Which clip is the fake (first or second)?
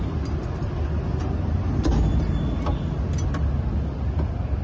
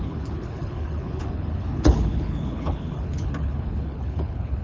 second